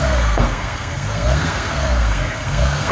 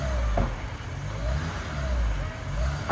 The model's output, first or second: first